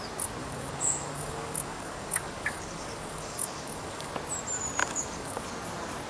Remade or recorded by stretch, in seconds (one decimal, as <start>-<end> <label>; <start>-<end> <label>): 0.0-0.4 recorded; 0.4-4.1 remade; 4.1-4.8 recorded; 4.8-5.5 remade; 5.5-6.1 recorded